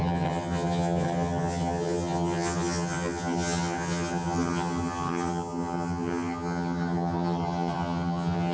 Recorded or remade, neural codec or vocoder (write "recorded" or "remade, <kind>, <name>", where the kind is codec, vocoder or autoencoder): remade, vocoder, HiFi-GAN